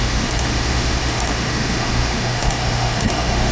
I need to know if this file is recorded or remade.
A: remade